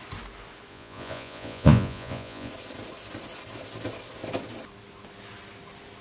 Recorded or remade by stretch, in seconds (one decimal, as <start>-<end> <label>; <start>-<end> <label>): 0.0-0.7 recorded; 0.7-2.5 remade; 2.5-6.0 recorded

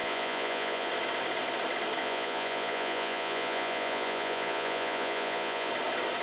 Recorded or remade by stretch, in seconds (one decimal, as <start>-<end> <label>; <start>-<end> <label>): 0.0-0.9 remade; 0.9-2.0 recorded; 2.0-5.7 remade; 5.7-6.2 recorded

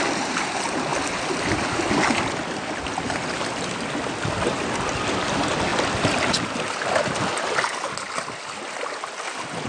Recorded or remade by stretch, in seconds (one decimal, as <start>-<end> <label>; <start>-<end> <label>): 0.0-9.7 recorded

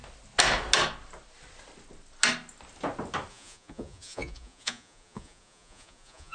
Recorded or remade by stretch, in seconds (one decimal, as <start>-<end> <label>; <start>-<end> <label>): 0.0-3.3 recorded; 3.3-6.3 remade

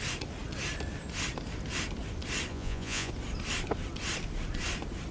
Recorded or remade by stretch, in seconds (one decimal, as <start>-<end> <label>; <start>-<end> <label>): 0.0-2.5 recorded; 2.5-3.1 remade; 3.1-5.1 recorded

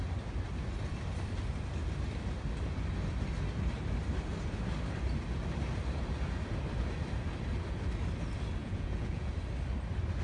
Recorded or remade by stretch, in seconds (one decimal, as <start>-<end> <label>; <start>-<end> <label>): 0.0-8.6 recorded; 8.6-9.3 remade; 9.3-10.2 recorded